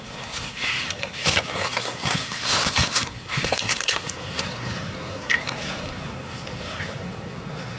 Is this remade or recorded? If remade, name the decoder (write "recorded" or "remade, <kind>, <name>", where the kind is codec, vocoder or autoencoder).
remade, codec, SNAC